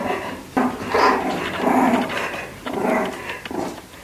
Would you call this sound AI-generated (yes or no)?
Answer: no